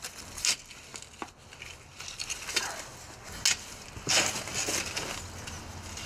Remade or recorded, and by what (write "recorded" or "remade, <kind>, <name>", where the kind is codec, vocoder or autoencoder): recorded